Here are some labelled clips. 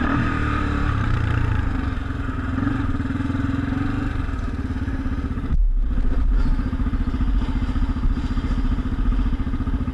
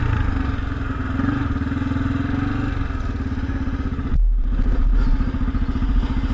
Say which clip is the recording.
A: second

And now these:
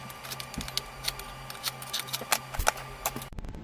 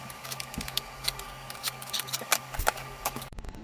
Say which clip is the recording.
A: first